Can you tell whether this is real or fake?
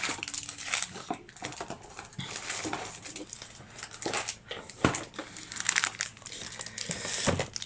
real